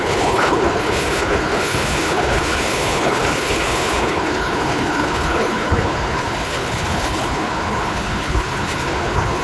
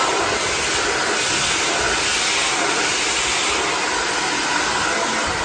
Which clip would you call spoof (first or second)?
first